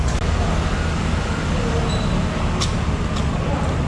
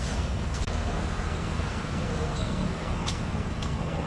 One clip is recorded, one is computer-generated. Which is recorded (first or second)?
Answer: first